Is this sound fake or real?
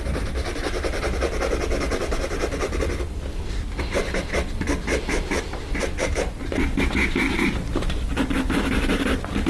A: fake